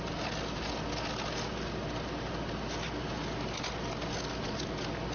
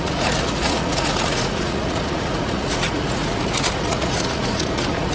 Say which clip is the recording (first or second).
first